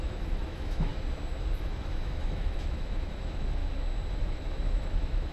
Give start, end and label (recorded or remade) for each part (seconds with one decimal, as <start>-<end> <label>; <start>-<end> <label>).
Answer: 0.0-0.9 remade; 0.9-1.6 recorded; 1.6-3.6 remade; 3.6-4.1 recorded; 4.1-5.3 remade